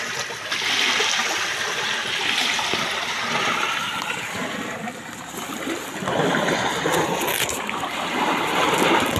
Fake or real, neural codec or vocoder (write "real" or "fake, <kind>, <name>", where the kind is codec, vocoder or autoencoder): real